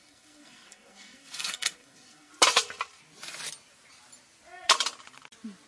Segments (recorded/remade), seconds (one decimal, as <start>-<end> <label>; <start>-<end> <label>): 0.0-2.3 remade; 2.3-5.7 recorded